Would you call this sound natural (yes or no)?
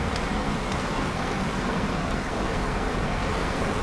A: no